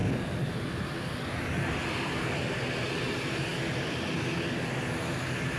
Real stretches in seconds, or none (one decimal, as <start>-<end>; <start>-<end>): 0.0-5.6

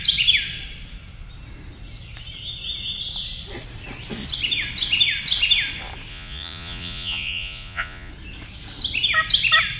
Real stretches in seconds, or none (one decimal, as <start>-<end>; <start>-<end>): 0.0-6.1; 8.1-9.8

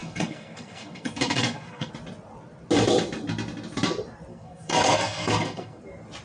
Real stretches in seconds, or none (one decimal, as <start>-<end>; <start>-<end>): 1.9-4.3; 5.8-6.2